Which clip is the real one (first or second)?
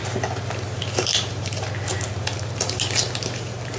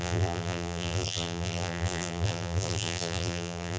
first